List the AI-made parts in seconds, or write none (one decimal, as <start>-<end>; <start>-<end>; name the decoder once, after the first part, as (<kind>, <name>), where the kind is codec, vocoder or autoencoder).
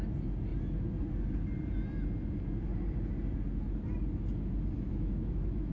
4.9-5.7 (autoencoder, DAC-VAE)